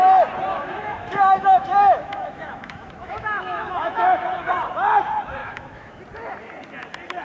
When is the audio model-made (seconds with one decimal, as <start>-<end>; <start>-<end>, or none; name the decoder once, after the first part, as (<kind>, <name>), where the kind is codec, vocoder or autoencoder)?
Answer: 0.5-4.2 (autoencoder, DAC-VAE); 5.4-6.0